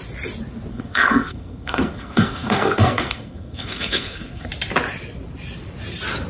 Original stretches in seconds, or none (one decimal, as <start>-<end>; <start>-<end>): 0.0-0.7; 4.5-6.3